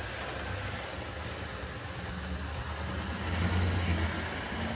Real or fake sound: real